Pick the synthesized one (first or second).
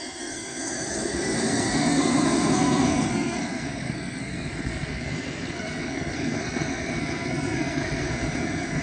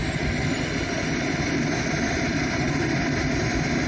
first